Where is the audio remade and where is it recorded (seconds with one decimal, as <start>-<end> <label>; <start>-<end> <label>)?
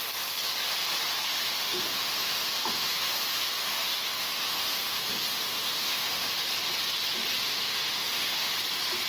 0.0-1.3 recorded; 1.3-6.3 remade; 6.3-7.4 recorded; 7.4-8.5 remade; 8.5-9.1 recorded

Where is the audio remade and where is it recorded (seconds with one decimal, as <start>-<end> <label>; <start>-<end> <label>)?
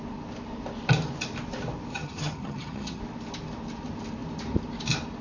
0.0-1.9 recorded; 1.9-3.0 remade; 3.0-5.2 recorded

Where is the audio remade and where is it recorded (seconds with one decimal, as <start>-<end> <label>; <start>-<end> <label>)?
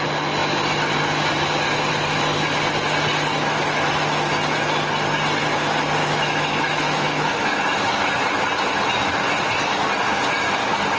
0.0-6.0 recorded; 6.0-8.0 remade; 8.0-11.0 recorded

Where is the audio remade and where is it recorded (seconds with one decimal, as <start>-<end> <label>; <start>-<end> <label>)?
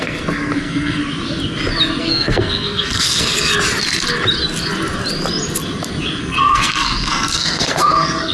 0.0-1.0 remade; 1.0-2.0 recorded; 2.0-3.5 remade; 3.5-6.2 recorded; 6.2-8.3 remade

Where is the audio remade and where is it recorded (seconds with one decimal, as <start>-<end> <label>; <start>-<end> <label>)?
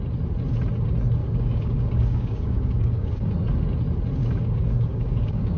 0.0-1.2 recorded; 1.2-3.3 remade; 3.3-4.2 recorded; 4.2-5.6 remade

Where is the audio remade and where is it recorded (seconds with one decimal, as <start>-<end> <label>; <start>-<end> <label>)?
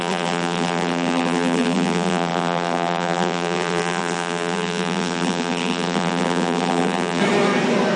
0.0-7.2 remade; 7.2-8.0 recorded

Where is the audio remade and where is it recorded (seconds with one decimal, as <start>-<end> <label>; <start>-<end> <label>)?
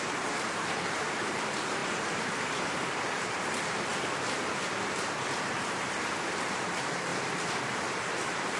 0.0-3.9 remade; 3.9-5.4 recorded; 5.4-7.1 remade; 7.1-7.6 recorded; 7.6-8.6 remade